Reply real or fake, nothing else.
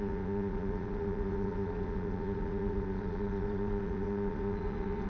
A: fake